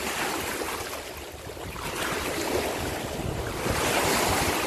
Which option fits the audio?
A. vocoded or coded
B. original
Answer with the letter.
B